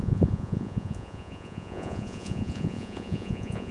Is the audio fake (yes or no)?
yes